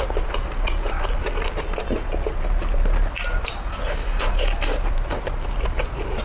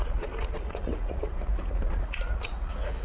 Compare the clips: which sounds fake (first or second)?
second